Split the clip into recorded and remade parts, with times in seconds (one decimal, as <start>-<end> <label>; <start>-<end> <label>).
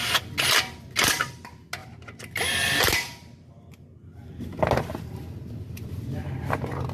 0.0-6.9 recorded